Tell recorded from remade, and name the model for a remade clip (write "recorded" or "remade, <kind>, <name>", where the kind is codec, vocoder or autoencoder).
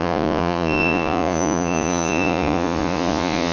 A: remade, vocoder, Vocos